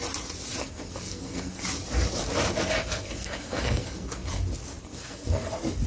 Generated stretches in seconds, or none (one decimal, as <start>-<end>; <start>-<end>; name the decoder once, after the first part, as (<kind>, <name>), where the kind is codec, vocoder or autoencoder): 0.6-1.6 (codec, SNAC); 2.8-4.3; 4.8-5.5